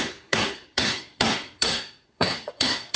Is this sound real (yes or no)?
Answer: no